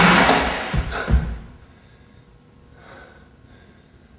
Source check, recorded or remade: recorded